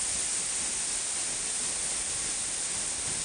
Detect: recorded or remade recorded